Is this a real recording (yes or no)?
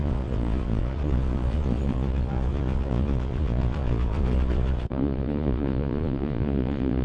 no